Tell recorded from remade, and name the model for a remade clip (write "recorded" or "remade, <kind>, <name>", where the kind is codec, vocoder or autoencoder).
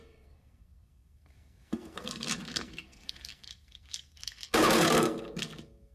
remade, codec, SNAC